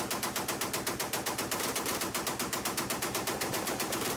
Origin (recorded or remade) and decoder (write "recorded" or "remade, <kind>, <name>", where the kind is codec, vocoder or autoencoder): remade, vocoder, BigVGAN v2